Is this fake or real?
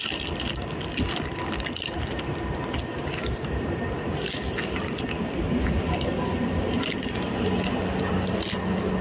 real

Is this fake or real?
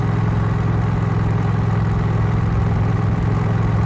real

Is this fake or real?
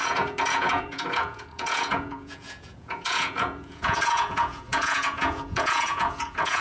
fake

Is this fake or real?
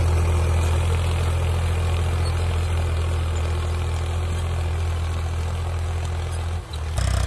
real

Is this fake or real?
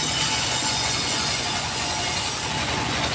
fake